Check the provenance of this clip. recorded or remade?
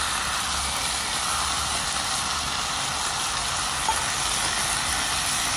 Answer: recorded